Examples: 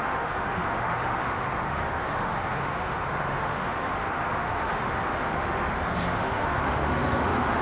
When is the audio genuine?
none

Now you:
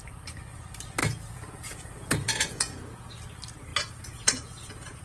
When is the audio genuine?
0.0-1.0; 3.1-3.7

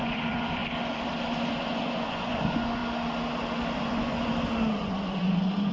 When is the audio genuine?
0.6-1.7; 2.8-3.8; 4.3-4.8